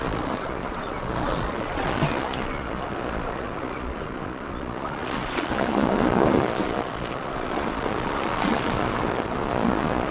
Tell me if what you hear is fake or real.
fake